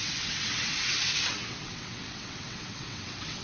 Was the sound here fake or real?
fake